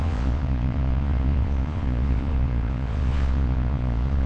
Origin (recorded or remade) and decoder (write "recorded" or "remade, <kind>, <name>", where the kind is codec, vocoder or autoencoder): remade, vocoder, Vocos